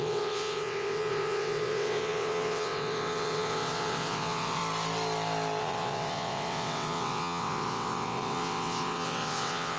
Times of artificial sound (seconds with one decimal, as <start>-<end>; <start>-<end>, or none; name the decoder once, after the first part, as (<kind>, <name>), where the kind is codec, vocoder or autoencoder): 0.0-4.6 (vocoder, WaveNeXt); 5.6-9.8